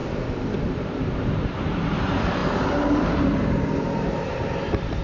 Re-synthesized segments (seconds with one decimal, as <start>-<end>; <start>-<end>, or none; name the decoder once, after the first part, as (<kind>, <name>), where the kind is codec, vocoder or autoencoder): 0.0-5.0 (vocoder, BigVGAN v2)

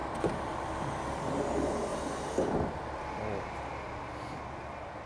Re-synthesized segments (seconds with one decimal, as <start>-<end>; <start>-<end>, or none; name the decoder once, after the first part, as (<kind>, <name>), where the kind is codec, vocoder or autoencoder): none

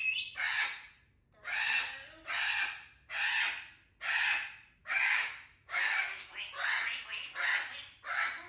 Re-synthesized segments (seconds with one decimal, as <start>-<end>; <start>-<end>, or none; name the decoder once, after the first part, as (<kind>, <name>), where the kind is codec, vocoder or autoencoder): 4.8-6.3 (codec, DAC)

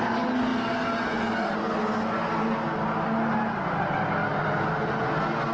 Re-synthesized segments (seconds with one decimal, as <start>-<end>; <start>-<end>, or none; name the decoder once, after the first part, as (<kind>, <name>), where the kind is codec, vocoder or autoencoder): none

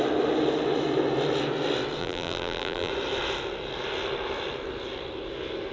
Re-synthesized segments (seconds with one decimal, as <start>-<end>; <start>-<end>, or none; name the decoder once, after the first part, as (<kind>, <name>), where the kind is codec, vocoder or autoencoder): 2.0-2.9 (vocoder, BigVGAN v2)

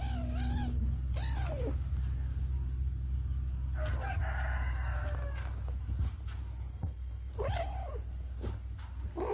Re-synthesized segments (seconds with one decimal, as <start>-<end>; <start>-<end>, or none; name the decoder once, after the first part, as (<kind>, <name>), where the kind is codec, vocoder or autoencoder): 6.7-7.3 (codec, SNAC)

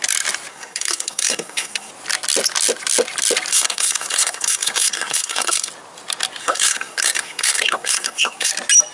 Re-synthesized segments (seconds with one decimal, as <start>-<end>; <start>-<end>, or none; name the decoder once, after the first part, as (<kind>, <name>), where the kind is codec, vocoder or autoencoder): 0.5-1.9 (codec, SNAC); 3.5-5.7; 6.4-8.5